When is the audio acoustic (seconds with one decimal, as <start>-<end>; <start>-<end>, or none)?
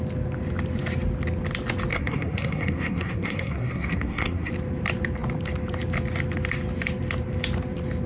0.0-1.9; 4.5-8.1